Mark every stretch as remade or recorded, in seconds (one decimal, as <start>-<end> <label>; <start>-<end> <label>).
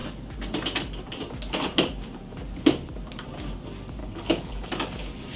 0.0-4.0 recorded; 4.0-4.7 remade; 4.7-5.4 recorded